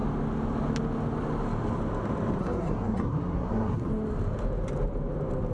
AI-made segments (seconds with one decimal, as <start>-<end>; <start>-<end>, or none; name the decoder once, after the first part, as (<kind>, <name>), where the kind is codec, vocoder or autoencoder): 2.4-3.9 (codec, SNAC)